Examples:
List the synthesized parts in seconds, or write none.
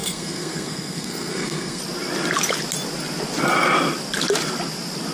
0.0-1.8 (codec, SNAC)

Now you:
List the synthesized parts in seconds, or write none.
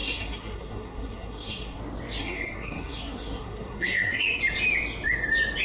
0.0-1.8 (codec, SNAC); 2.2-4.4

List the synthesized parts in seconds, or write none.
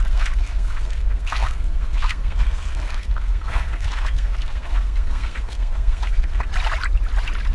0.0-6.5 (codec, SNAC)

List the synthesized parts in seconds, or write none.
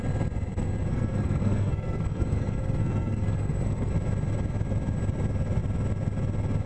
0.8-3.9 (codec, SNAC)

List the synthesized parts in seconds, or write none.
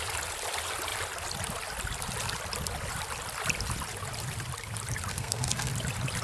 5.1-5.7 (codec, SNAC)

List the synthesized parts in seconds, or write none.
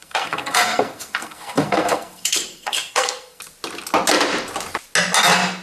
0.0-3.4 (codec, SNAC)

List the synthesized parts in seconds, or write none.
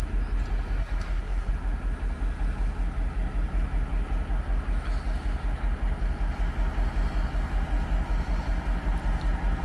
0.8-1.5 (codec, SNAC)